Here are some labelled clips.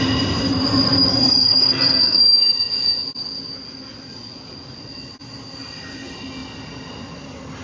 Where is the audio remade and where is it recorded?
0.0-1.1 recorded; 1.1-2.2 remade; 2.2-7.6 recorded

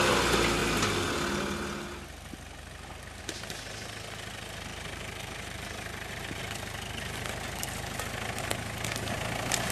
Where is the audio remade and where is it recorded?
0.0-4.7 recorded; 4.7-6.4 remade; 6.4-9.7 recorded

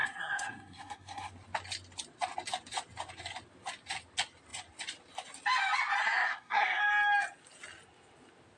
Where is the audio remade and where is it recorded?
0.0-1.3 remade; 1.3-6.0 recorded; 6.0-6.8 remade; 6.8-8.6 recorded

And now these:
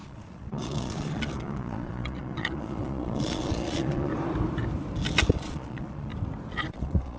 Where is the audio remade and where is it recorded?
0.0-4.1 remade; 4.1-5.3 recorded; 5.3-6.1 remade; 6.1-6.7 recorded; 6.7-7.2 remade

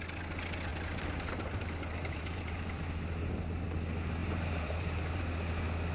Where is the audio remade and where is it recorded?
0.0-1.9 recorded; 1.9-2.8 remade; 2.8-4.2 recorded; 4.2-5.2 remade; 5.2-5.9 recorded

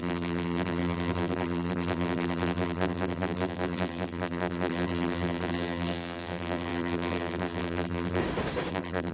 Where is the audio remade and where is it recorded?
0.0-8.2 remade; 8.2-8.7 recorded; 8.7-9.1 remade

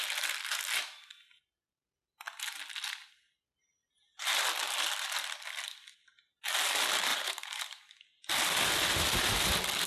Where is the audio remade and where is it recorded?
0.0-7.1 recorded; 7.1-7.8 remade; 7.8-9.9 recorded